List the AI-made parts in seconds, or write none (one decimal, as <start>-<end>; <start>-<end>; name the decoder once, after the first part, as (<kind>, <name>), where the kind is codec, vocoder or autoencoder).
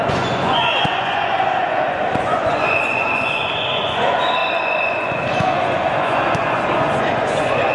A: 0.0-7.7 (vocoder, Vocos)